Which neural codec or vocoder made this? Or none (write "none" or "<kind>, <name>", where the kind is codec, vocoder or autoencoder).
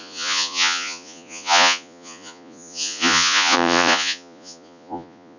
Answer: vocoder, Vocos